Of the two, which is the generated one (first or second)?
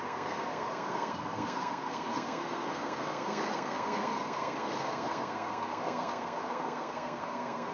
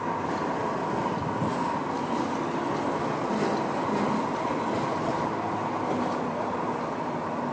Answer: first